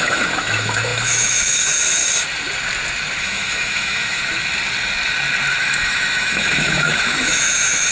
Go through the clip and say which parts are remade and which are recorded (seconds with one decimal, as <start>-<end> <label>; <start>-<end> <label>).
0.0-2.0 remade; 2.0-3.2 recorded; 3.2-4.2 remade; 4.2-5.6 recorded; 5.6-7.9 remade